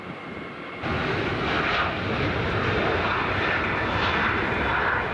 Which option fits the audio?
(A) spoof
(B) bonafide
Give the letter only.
B